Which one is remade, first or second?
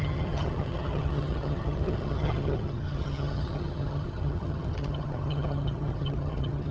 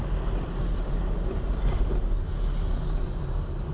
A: first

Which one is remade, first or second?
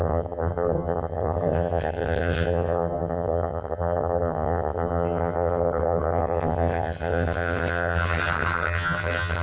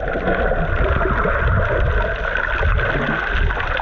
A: first